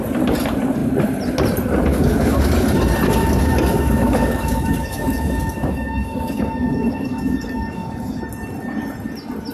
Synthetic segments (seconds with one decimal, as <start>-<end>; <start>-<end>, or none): 1.9-2.5; 3.2-8.2